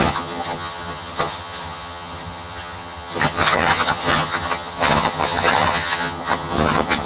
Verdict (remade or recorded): remade